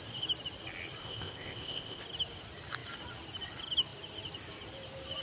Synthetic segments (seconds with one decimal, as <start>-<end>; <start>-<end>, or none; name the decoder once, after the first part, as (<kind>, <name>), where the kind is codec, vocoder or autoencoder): 1.0-2.0 (codec, ZipCodec)